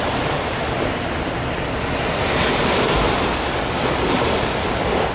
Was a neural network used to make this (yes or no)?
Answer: no